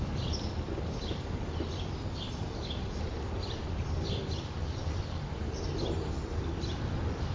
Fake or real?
real